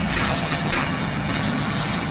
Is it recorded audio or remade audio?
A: remade